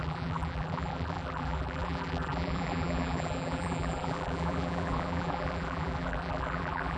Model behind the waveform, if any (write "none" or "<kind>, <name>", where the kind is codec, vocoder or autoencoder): vocoder, BigVGAN v2